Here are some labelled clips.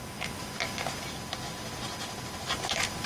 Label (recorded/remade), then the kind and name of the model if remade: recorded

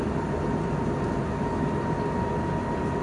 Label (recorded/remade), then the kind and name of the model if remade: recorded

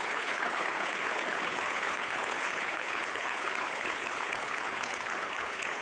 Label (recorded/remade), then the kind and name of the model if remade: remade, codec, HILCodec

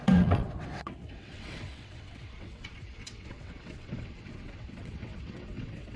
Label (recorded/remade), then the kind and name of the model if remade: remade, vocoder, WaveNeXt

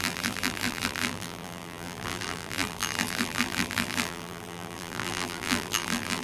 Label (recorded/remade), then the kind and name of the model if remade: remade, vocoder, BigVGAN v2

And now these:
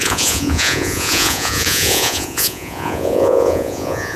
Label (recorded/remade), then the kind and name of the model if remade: remade, vocoder, Vocos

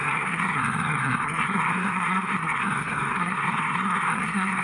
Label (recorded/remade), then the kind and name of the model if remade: remade, codec, SNAC